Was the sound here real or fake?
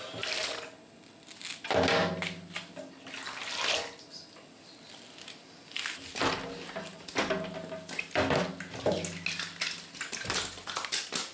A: real